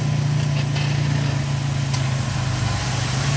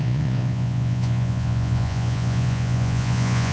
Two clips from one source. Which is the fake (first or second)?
second